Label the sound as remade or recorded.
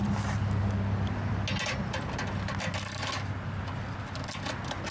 recorded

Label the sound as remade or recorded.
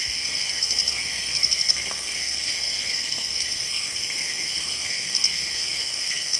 remade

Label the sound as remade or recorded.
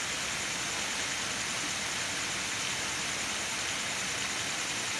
recorded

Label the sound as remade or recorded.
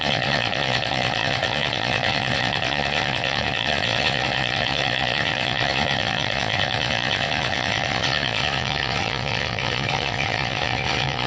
remade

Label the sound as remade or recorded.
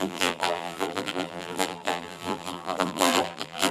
remade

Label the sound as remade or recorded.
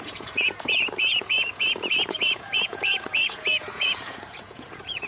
remade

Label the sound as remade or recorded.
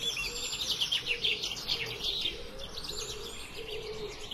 recorded